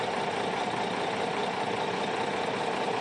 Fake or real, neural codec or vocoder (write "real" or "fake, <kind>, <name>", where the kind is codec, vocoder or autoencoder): real